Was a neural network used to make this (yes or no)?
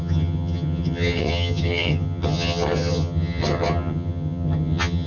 yes